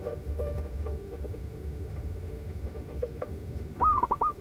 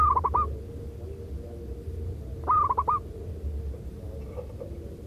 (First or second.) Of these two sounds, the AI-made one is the first